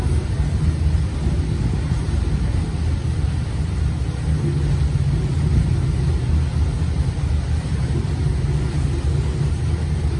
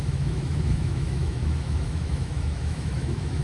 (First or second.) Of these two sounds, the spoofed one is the second